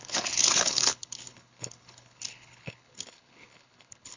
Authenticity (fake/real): fake